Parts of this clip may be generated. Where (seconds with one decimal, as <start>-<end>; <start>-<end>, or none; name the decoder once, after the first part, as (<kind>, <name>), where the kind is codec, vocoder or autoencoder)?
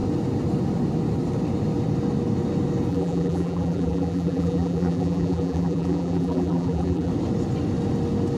2.9-7.1 (vocoder, BigVGAN v2)